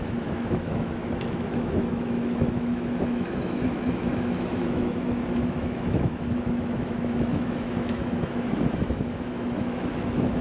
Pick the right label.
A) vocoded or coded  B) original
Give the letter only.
A